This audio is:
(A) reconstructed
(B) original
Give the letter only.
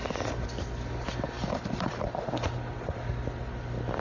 B